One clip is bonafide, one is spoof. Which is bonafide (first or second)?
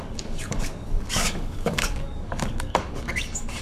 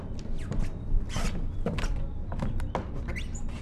second